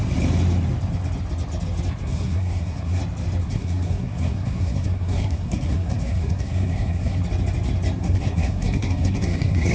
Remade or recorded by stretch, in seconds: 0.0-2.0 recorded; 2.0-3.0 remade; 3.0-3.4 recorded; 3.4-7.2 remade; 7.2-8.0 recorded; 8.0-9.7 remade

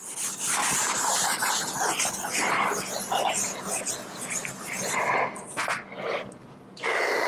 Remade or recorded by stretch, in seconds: 0.0-0.6 recorded; 0.6-1.5 remade; 1.5-7.3 recorded

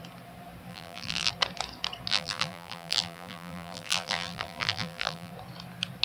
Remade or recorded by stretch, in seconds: 0.0-0.7 recorded; 0.7-1.3 remade; 1.3-2.1 recorded; 2.1-5.3 remade; 5.3-6.0 recorded

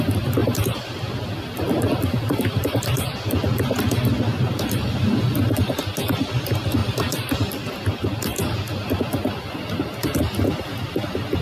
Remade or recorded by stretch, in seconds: 0.0-0.4 recorded; 0.4-3.4 remade; 3.4-6.8 recorded; 6.8-8.5 remade; 8.5-11.4 recorded

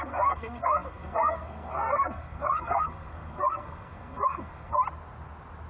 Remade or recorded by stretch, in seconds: 0.0-4.8 remade; 4.8-5.7 recorded